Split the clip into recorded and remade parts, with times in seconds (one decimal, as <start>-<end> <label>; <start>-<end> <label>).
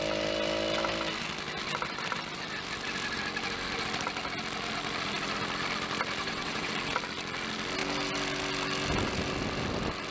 0.0-6.2 recorded; 6.2-6.7 remade; 6.7-10.1 recorded